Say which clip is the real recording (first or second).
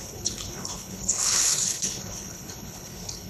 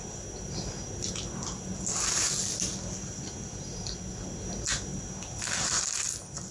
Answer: second